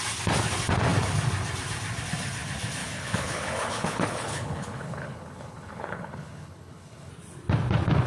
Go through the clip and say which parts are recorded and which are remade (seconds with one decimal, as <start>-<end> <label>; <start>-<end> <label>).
0.0-2.8 recorded; 2.8-7.1 remade; 7.1-8.1 recorded